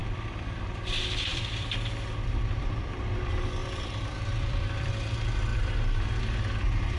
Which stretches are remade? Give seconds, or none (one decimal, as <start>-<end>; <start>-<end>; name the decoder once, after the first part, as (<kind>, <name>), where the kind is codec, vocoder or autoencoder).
0.0-0.8 (vocoder, BigVGAN v2); 1.3-2.9; 3.6-4.9